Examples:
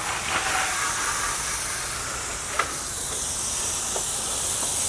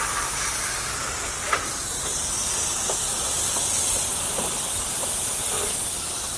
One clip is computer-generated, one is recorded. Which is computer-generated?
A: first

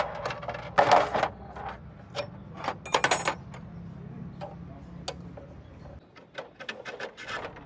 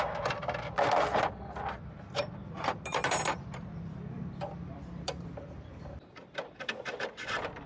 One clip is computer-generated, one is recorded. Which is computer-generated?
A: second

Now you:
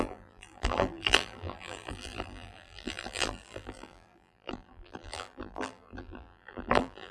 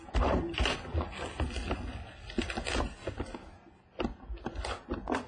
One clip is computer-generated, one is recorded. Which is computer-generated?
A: first